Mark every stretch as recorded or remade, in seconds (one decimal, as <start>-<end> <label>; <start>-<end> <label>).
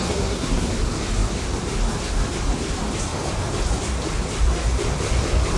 0.0-0.7 remade; 0.7-5.6 recorded